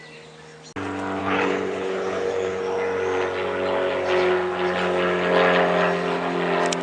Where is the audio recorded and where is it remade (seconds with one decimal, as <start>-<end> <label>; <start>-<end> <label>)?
0.0-1.2 recorded; 1.2-2.6 remade; 2.6-6.8 recorded

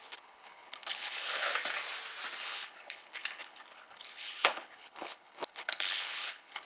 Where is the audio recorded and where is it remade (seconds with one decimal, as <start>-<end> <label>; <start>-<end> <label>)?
0.0-1.5 remade; 1.5-2.4 recorded; 2.4-6.7 remade

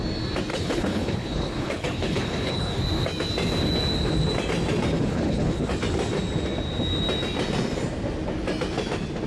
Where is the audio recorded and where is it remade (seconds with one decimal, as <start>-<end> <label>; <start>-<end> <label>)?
0.0-0.5 recorded; 0.5-2.8 remade; 2.8-5.1 recorded; 5.1-5.7 remade; 5.7-9.3 recorded

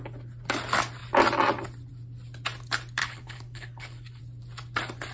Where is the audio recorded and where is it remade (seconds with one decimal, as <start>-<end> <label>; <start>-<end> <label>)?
0.0-3.0 recorded; 3.0-4.2 remade; 4.2-5.1 recorded

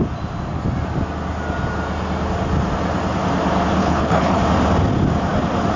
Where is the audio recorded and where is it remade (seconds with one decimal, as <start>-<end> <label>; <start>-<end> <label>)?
0.0-3.8 recorded; 3.8-4.4 remade; 4.4-5.8 recorded